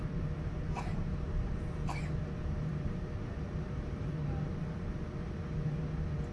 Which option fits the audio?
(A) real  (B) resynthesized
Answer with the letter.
B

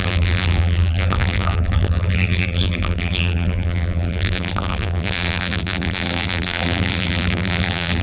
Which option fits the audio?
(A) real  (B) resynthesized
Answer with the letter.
B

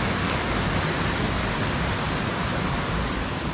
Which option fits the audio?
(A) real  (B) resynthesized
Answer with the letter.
A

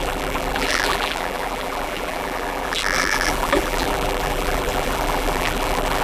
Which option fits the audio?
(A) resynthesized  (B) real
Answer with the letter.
A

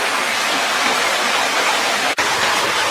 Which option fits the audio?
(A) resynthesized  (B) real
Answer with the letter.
B